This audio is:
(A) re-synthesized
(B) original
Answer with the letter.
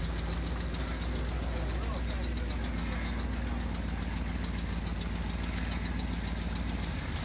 B